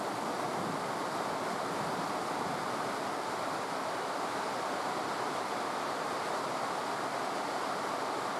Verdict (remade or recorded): recorded